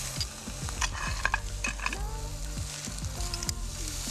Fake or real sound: real